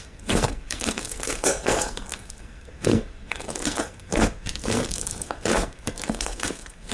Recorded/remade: remade